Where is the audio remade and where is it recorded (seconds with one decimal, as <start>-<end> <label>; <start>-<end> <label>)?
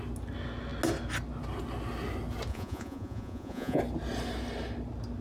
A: 0.0-2.5 recorded; 2.5-3.8 remade; 3.8-5.2 recorded